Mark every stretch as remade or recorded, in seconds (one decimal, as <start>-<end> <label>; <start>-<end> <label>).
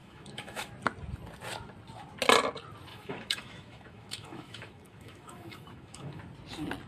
0.0-0.7 remade; 0.7-2.9 recorded; 2.9-6.2 remade; 6.2-6.9 recorded